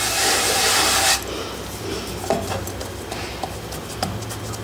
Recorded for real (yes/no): yes